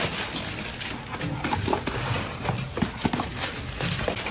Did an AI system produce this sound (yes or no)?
no